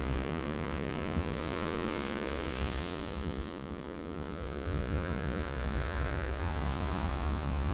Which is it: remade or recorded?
remade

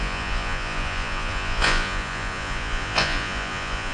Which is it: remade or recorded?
remade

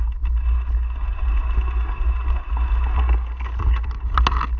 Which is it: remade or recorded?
recorded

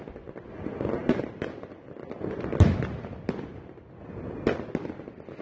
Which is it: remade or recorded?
recorded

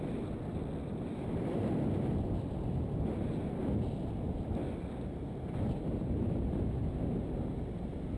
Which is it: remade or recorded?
recorded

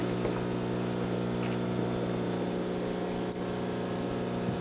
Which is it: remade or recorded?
recorded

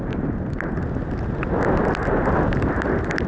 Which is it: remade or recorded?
recorded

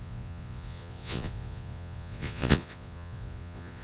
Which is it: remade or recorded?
remade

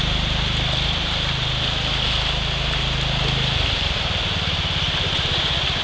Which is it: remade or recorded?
recorded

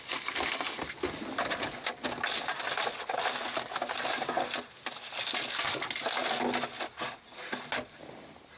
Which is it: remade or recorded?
recorded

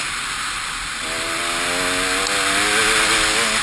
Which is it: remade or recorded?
recorded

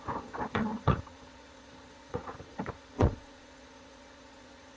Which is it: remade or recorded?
remade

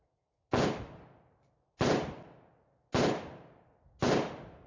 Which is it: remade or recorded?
recorded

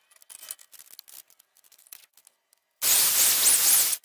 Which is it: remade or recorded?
recorded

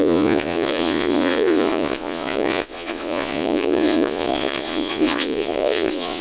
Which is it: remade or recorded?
remade